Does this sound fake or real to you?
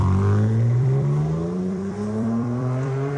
fake